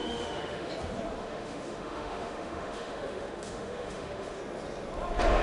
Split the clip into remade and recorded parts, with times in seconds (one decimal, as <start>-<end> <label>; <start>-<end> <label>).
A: 0.0-0.7 remade; 0.7-1.2 recorded; 1.2-4.4 remade; 4.4-5.4 recorded

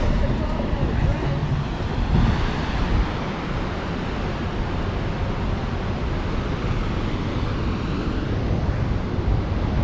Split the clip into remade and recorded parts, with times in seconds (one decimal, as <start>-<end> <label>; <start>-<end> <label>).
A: 0.0-1.4 recorded; 1.4-2.7 remade; 2.7-9.8 recorded